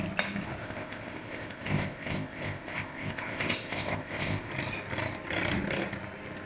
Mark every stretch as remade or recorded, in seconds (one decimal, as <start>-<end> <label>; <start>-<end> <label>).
0.0-0.6 recorded; 0.6-4.5 remade; 4.5-6.5 recorded